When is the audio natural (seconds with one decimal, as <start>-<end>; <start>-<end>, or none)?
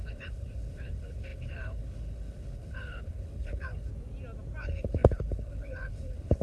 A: 3.9-4.6